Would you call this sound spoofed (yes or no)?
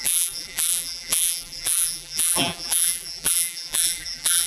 yes